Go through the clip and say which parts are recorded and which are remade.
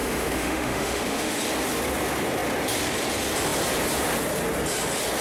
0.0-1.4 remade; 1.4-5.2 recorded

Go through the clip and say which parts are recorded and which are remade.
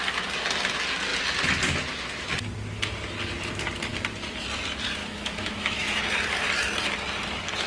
0.0-5.0 recorded; 5.0-6.0 remade; 6.0-7.7 recorded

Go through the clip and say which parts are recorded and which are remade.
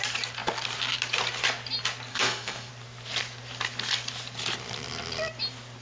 0.0-2.1 recorded; 2.1-2.7 remade; 2.7-5.8 recorded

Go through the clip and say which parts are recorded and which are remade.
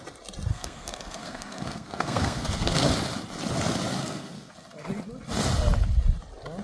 0.0-0.5 recorded; 0.5-2.9 remade; 2.9-4.0 recorded; 4.0-4.5 remade; 4.5-6.6 recorded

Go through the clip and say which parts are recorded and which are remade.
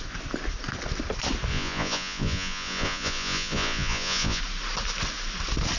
0.0-1.5 recorded; 1.5-4.4 remade; 4.4-5.8 recorded